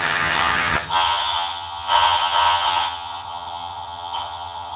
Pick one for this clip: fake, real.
fake